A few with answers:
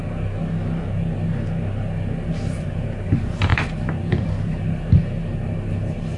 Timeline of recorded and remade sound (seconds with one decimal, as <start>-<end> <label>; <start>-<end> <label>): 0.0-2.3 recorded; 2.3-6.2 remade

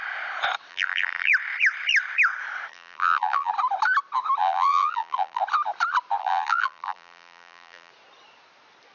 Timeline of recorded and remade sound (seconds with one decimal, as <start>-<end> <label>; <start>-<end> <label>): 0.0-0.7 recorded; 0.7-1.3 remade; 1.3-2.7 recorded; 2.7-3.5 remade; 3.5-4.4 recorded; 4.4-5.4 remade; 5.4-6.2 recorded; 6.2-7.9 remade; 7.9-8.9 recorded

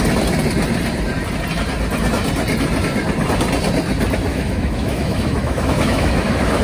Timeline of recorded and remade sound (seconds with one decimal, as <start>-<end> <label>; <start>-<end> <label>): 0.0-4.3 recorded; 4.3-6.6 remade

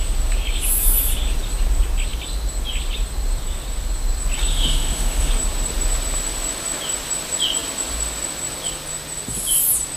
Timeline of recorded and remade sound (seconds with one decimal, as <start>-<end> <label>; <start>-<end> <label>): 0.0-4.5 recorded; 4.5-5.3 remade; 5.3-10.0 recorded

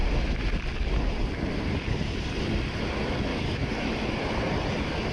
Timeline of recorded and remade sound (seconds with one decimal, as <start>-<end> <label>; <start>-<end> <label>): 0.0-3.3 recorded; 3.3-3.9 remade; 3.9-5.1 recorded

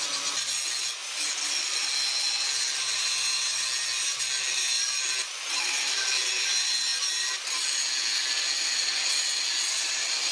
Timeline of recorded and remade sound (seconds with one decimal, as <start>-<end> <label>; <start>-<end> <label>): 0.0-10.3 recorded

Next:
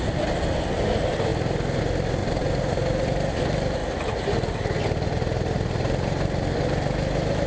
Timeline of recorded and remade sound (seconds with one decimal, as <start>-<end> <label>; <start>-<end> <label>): 0.0-2.2 recorded; 2.2-3.0 remade; 3.0-3.8 recorded; 3.8-4.5 remade; 4.5-7.5 recorded